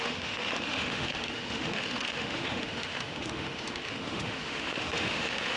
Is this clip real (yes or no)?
no